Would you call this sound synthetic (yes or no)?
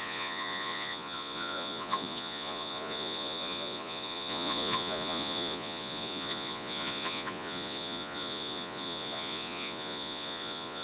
yes